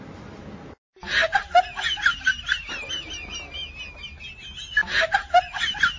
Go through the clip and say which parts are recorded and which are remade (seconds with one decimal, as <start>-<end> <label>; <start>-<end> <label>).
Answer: 0.0-6.0 recorded